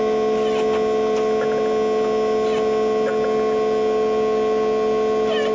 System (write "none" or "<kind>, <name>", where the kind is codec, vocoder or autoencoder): none